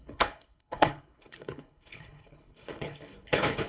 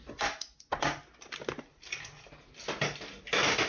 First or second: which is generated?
first